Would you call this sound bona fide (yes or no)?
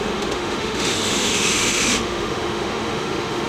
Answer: no